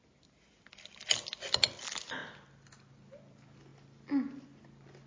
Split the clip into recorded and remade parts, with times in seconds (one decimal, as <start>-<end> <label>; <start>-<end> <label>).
0.0-5.1 recorded